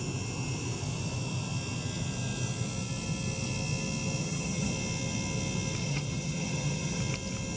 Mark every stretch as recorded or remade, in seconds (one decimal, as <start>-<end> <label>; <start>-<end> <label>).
0.0-4.2 recorded; 4.2-4.7 remade; 4.7-5.8 recorded; 5.8-7.0 remade; 7.0-7.6 recorded